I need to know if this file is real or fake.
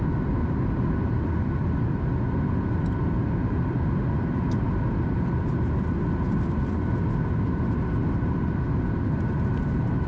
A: real